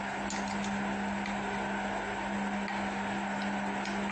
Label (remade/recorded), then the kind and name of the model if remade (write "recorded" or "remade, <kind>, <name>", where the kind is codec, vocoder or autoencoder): recorded